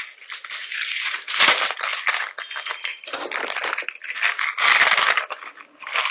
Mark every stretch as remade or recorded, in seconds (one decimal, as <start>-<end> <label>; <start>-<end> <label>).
0.0-0.4 recorded; 0.4-1.3 remade; 1.3-6.1 recorded